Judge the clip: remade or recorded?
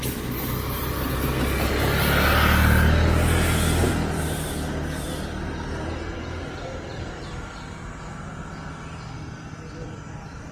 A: recorded